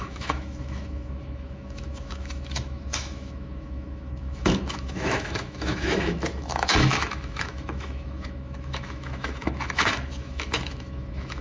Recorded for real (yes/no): no